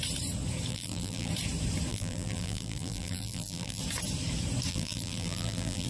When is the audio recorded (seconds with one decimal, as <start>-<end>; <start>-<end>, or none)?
0.0-0.7; 1.3-1.9; 3.8-4.7